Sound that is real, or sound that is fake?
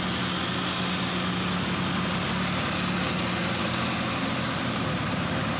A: real